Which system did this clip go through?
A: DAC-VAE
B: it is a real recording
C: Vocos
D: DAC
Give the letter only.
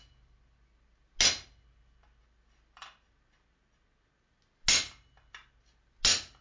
B